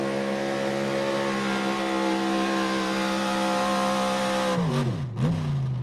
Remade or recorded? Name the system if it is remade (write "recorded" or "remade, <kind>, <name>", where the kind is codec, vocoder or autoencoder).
recorded